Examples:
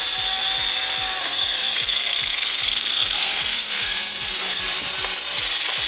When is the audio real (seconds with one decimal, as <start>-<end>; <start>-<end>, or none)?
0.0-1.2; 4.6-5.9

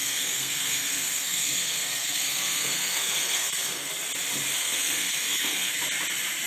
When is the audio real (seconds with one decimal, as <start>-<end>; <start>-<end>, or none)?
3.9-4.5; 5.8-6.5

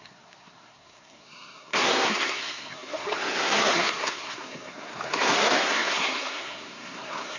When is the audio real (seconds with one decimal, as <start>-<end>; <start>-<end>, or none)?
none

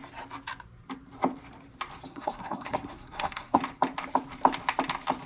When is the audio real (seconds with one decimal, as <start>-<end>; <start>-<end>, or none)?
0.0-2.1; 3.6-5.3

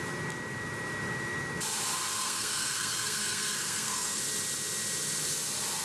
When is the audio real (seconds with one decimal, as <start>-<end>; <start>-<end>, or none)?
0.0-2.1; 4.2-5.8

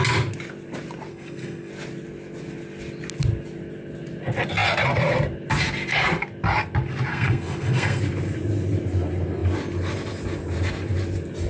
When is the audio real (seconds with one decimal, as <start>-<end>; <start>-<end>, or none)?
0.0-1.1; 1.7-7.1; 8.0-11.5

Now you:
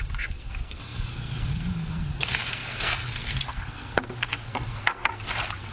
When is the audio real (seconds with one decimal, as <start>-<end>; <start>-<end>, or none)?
none

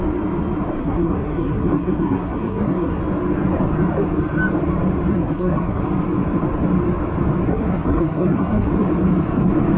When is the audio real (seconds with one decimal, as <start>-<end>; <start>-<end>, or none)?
0.0-0.8; 3.0-5.1; 5.8-7.5; 8.7-9.8